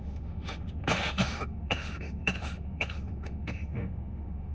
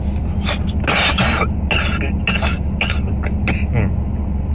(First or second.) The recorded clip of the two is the second